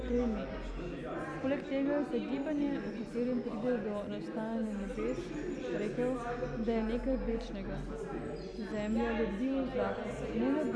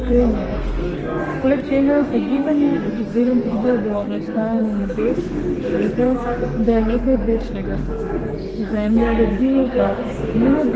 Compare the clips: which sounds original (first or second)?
first